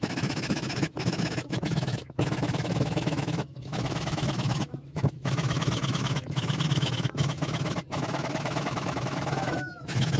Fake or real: fake